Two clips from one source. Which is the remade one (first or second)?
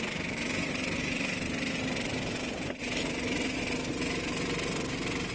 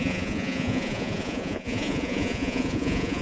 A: second